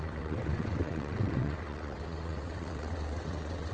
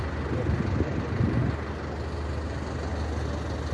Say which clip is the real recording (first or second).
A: second